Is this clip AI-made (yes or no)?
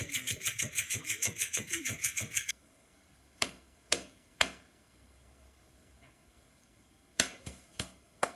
yes